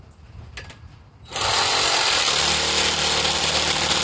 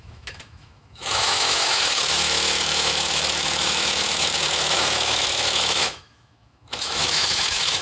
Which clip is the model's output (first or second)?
second